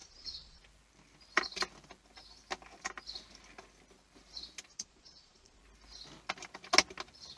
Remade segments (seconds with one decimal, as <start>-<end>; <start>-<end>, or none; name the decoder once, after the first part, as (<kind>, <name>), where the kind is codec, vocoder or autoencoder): 0.0-0.6 (vocoder, Vocos); 4.7-5.6